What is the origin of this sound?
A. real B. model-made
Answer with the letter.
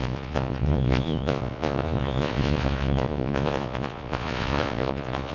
B